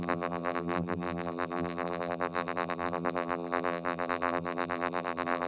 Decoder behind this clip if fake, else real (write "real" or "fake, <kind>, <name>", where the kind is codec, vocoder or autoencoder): fake, vocoder, BigVGAN v2